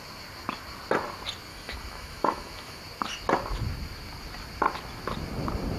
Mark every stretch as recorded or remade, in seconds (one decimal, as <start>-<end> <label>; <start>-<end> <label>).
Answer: 0.0-1.5 recorded; 1.5-2.8 remade; 2.8-5.8 recorded